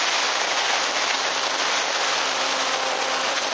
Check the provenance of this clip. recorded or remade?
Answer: recorded